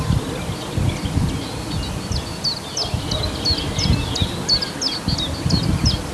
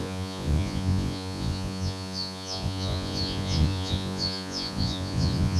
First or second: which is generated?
second